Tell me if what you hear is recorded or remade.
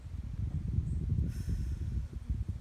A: recorded